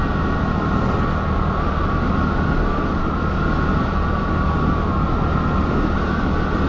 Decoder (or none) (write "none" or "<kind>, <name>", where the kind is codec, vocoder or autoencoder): none